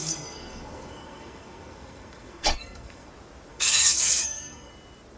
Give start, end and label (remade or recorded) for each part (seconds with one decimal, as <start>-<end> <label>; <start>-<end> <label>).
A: 0.0-3.1 remade; 3.1-3.5 recorded; 3.5-4.7 remade; 4.7-5.2 recorded